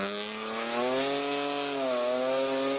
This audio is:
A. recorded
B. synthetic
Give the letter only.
A